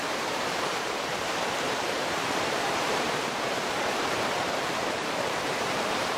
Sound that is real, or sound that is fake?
fake